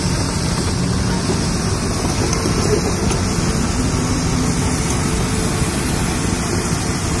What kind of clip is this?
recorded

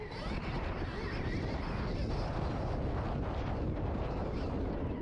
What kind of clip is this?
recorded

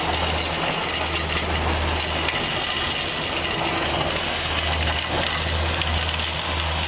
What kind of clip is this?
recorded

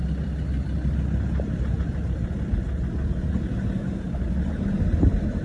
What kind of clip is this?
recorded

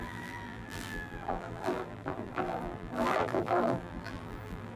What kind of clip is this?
remade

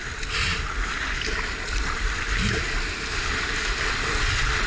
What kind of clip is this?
recorded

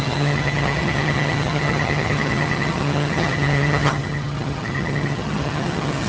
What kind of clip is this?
remade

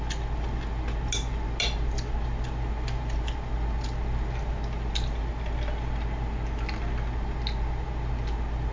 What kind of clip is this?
recorded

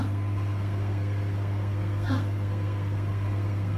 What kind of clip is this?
remade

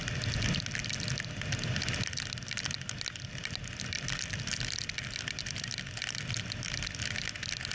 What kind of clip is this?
recorded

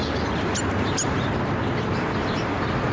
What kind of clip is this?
recorded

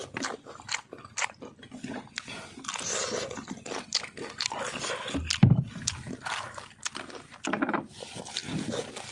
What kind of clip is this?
recorded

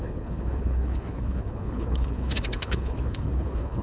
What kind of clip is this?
remade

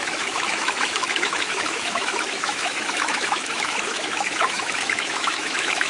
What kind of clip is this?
remade